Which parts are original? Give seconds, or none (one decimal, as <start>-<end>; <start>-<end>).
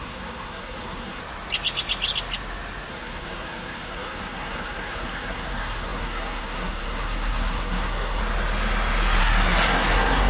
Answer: 1.2-2.9; 8.2-9.2